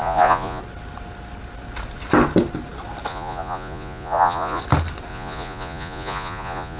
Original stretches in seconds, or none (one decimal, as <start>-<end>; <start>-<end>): 0.6-3.1; 4.6-5.1